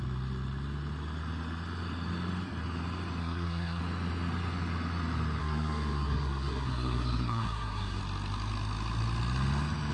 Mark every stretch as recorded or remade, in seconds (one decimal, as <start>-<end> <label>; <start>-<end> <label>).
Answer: 0.0-3.2 recorded; 3.2-3.8 remade; 3.8-5.4 recorded; 5.4-8.0 remade; 8.0-9.9 recorded